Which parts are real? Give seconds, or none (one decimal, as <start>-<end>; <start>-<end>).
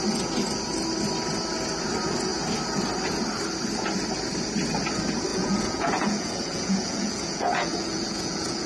0.0-5.3